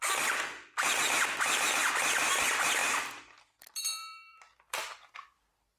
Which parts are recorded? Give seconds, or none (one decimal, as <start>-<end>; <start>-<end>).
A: 0.0-2.8; 5.3-5.8